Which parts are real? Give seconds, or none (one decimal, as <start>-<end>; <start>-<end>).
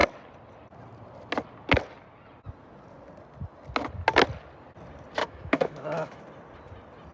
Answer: 0.0-5.2; 6.2-7.1